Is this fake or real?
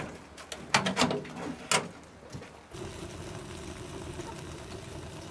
real